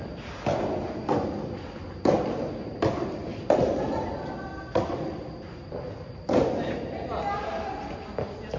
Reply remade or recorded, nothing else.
recorded